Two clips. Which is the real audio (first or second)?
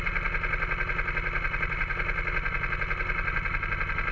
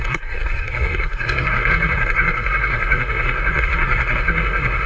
first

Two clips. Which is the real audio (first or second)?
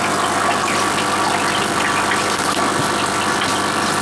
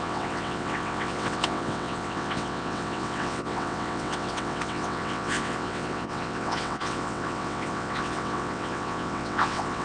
first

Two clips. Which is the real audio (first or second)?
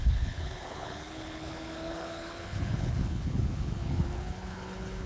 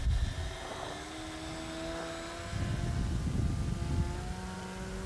second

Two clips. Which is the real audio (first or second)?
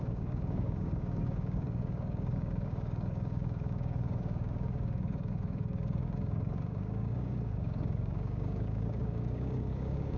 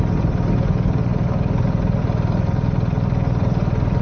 second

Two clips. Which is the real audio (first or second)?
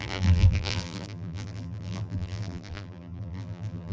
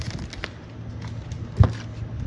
second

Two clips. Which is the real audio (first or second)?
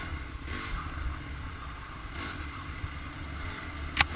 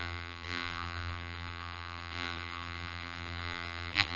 first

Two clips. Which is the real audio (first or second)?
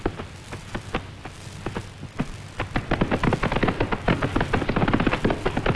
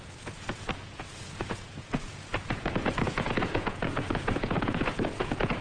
first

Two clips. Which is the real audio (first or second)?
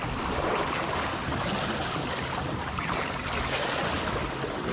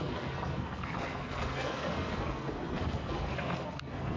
first